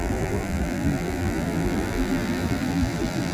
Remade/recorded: remade